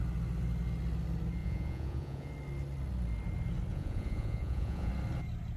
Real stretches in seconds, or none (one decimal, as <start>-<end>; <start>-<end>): 0.0-1.4; 2.3-3.7; 4.9-5.6